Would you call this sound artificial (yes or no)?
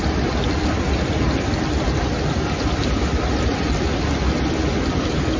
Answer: no